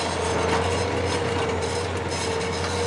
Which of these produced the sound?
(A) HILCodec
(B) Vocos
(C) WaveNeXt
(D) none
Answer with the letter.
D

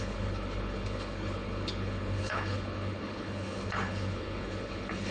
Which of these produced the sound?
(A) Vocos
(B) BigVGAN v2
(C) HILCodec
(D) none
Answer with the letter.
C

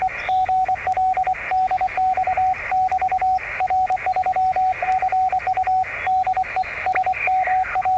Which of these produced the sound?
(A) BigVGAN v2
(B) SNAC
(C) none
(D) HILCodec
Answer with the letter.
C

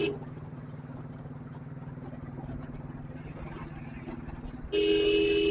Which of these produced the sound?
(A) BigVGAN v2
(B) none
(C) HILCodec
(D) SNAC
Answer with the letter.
B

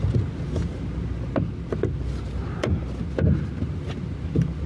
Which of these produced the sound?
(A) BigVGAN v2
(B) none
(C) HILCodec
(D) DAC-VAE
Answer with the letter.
B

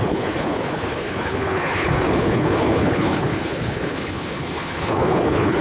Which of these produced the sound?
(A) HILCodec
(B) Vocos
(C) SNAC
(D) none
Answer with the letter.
A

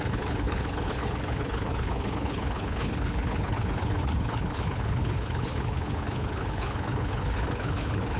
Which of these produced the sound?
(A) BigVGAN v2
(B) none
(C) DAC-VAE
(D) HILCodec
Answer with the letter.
D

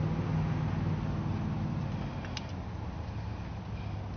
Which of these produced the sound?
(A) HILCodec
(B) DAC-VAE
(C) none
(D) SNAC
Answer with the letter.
C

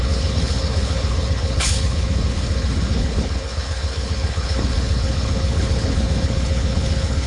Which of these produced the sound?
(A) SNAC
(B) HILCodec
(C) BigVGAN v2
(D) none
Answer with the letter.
B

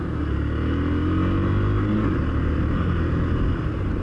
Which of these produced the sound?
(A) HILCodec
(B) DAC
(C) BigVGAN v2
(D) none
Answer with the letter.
D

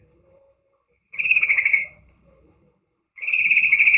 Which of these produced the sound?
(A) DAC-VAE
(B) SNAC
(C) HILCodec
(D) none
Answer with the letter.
C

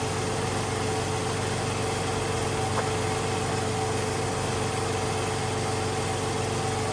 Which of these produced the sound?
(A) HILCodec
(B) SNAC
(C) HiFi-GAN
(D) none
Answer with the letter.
D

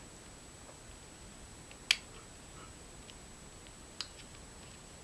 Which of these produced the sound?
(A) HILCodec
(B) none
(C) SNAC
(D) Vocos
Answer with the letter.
B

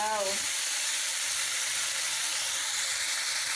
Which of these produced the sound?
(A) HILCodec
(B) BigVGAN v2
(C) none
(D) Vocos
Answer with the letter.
C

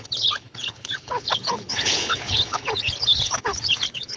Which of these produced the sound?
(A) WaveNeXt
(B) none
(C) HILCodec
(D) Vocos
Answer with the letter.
C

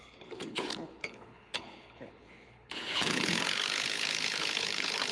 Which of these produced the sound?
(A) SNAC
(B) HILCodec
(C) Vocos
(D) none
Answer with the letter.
B